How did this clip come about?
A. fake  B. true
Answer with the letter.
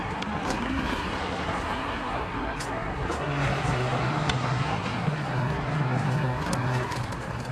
A